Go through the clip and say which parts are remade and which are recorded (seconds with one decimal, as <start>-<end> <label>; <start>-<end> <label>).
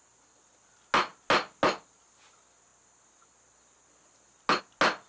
0.0-5.1 recorded